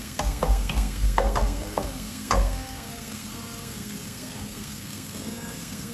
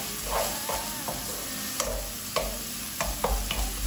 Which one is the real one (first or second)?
second